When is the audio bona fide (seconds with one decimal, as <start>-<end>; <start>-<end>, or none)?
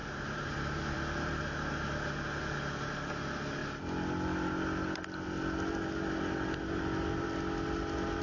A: 1.4-8.2